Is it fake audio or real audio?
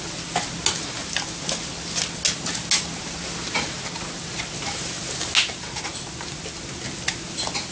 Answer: real